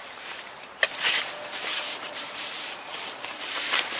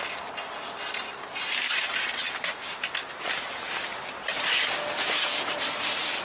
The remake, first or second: first